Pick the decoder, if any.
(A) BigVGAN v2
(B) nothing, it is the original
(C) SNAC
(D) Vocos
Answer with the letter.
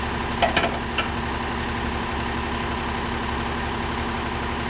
B